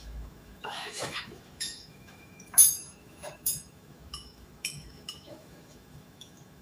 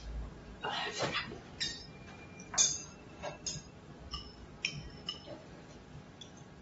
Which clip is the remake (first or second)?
first